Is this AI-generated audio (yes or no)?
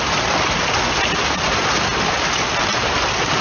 no